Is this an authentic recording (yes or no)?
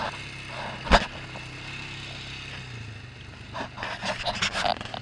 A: yes